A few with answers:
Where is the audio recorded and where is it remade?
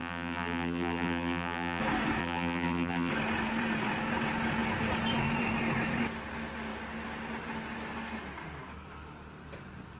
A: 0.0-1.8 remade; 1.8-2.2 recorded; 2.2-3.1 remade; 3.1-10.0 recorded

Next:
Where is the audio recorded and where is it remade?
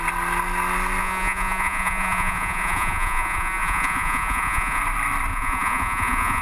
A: 0.0-1.0 recorded; 1.0-4.8 remade; 4.8-5.3 recorded; 5.3-6.4 remade